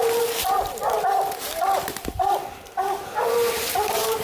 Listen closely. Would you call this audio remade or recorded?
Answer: recorded